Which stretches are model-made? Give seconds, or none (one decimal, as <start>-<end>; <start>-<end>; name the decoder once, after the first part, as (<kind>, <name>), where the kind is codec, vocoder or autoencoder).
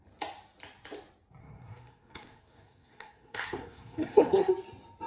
1.4-4.5 (codec, SNAC)